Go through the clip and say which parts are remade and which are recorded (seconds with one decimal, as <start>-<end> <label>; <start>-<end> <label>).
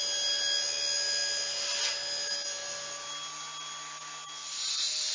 0.0-5.1 recorded